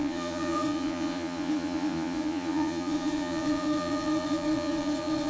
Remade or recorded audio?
remade